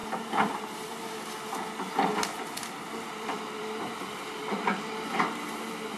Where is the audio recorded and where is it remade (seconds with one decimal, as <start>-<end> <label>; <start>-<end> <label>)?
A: 0.0-0.5 remade; 0.5-2.6 recorded; 2.6-5.5 remade; 5.5-6.0 recorded